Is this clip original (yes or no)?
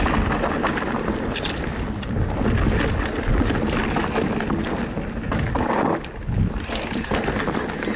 yes